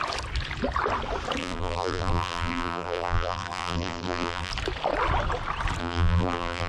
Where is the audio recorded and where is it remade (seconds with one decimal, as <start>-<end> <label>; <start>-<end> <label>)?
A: 0.0-1.4 recorded; 1.4-4.5 remade; 4.5-5.8 recorded; 5.8-6.7 remade